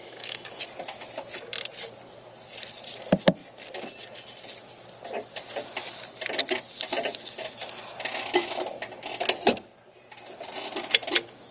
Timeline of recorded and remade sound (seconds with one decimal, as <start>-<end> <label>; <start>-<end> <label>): 0.0-0.6 remade; 0.6-11.5 recorded